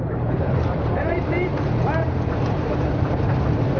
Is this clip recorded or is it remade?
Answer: remade